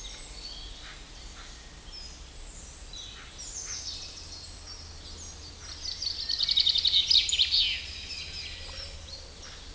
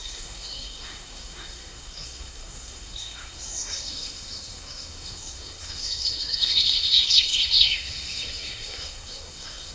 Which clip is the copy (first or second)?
second